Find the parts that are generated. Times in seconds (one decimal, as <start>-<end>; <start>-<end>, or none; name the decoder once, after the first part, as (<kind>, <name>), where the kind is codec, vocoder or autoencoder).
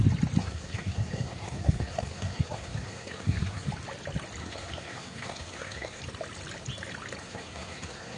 0.4-3.7 (codec, SNAC); 4.4-6.0; 7.2-8.2